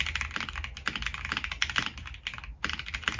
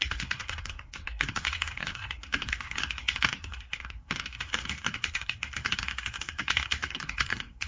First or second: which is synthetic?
second